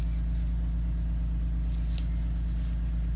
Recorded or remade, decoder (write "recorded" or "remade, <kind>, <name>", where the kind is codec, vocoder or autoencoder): recorded